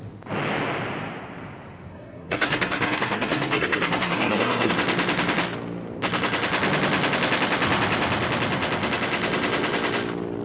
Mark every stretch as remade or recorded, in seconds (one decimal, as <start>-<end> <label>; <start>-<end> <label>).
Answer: 0.0-1.9 recorded; 1.9-4.7 remade; 4.7-10.4 recorded